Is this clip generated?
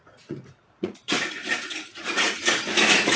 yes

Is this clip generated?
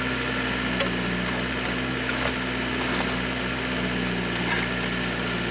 no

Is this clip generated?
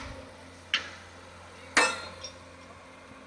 no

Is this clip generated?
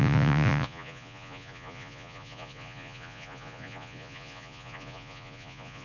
yes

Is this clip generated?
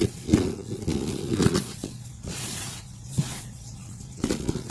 yes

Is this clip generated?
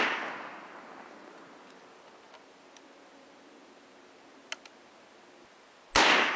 no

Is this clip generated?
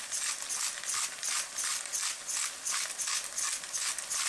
no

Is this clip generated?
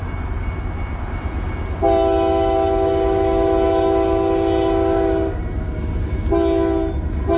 no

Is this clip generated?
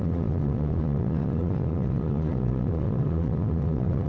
yes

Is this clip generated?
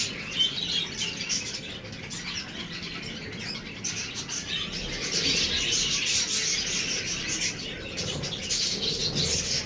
no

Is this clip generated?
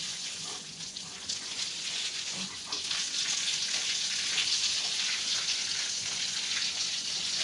yes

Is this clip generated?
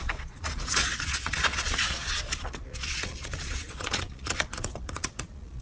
yes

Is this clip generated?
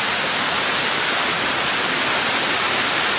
no